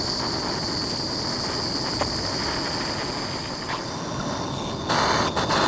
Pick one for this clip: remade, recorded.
recorded